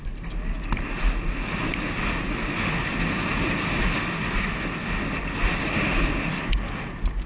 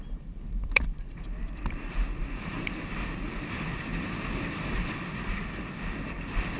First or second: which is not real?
second